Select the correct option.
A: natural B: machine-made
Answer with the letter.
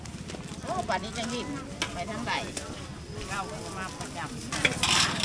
A